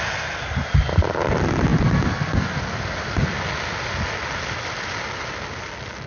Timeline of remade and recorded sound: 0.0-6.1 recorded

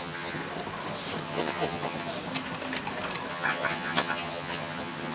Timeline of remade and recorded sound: 0.0-0.4 remade; 0.4-1.2 recorded; 1.2-2.1 remade; 2.1-3.3 recorded; 3.3-5.1 remade